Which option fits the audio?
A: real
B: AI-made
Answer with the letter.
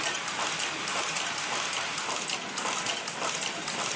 A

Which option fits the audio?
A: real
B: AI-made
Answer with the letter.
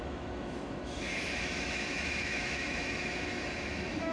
B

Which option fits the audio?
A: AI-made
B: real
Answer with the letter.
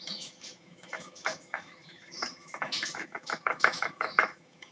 A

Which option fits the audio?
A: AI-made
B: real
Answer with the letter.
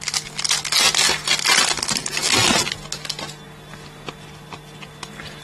B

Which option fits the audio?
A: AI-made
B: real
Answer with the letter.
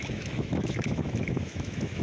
A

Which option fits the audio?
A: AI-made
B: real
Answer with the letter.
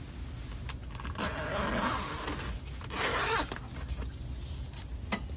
B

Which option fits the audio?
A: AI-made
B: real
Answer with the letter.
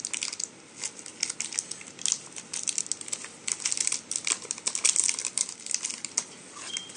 B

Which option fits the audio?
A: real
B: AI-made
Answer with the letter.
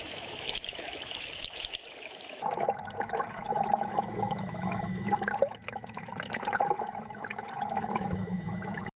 B